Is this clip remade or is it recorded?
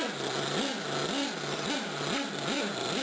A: recorded